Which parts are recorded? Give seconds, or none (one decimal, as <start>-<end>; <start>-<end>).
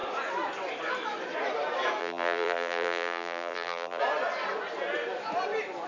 0.0-2.0; 4.0-5.9